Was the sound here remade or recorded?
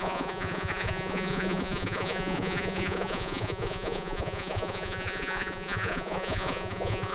remade